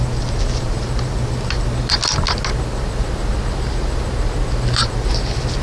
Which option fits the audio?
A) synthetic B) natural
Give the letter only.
B